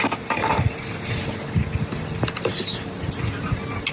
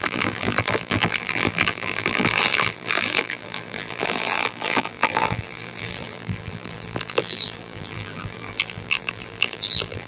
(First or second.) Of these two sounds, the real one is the first